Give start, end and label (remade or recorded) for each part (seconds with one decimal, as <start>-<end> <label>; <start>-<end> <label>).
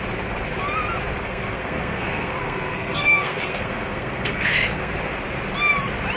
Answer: 0.0-1.2 recorded; 1.2-4.9 remade; 4.9-6.2 recorded